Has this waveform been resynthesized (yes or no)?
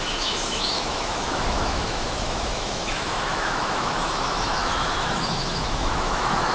yes